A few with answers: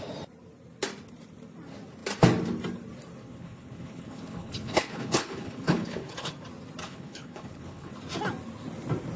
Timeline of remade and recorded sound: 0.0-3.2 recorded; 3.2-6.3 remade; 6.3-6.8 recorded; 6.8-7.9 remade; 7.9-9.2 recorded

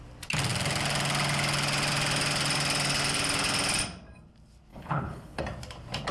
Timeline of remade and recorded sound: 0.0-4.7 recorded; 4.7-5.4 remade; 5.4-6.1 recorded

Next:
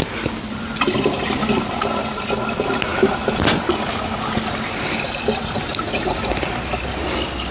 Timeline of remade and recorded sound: 0.0-7.5 recorded

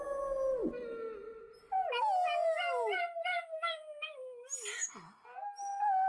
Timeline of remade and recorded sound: 0.0-6.1 recorded